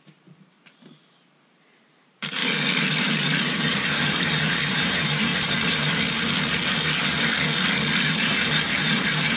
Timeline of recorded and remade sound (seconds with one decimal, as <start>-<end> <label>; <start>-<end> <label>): 0.0-2.4 remade; 2.4-3.0 recorded; 3.0-5.3 remade; 5.3-8.0 recorded; 8.0-9.4 remade